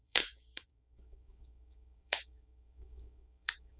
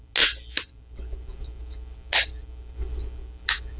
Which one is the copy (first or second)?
first